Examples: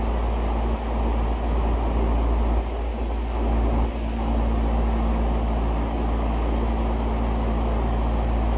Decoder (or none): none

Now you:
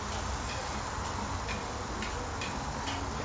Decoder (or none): none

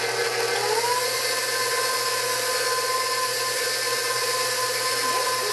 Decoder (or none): none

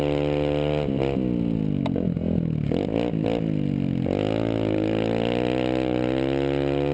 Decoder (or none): none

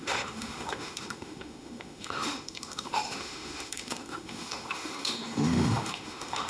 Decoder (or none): autoencoder, DAC-VAE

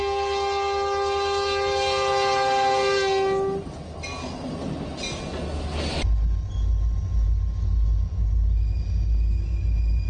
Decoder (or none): none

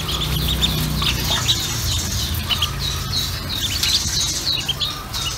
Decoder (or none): none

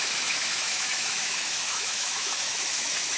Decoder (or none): autoencoder, DAC-VAE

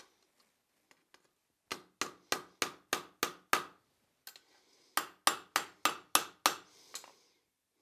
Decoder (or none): none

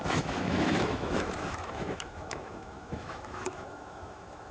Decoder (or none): autoencoder, DAC-VAE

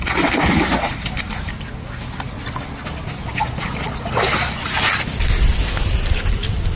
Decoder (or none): none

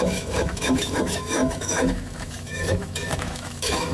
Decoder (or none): autoencoder, DAC-VAE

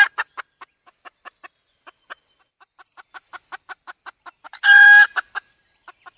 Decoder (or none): none